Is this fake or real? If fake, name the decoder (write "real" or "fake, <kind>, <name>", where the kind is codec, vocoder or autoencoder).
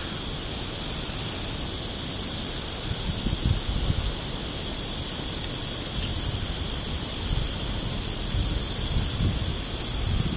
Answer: real